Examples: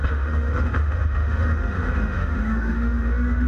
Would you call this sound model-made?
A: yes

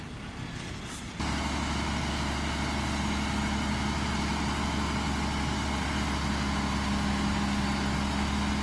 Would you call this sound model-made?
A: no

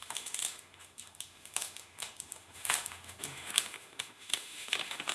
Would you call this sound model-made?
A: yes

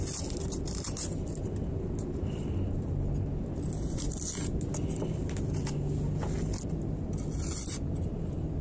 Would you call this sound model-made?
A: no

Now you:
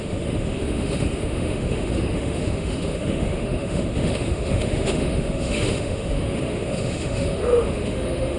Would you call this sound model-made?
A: yes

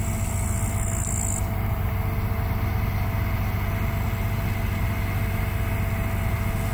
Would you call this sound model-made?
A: no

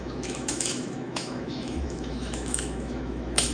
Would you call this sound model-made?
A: yes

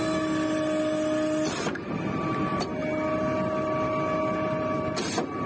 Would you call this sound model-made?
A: no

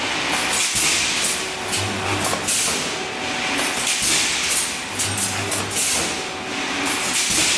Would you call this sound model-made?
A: no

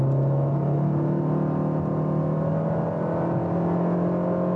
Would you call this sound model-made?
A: no